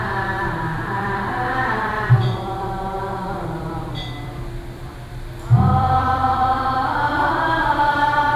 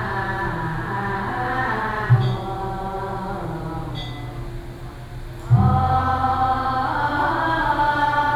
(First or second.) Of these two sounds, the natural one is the second